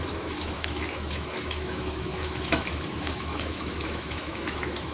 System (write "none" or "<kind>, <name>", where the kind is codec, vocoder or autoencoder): autoencoder, DAC-VAE